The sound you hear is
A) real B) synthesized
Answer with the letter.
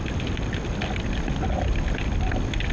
A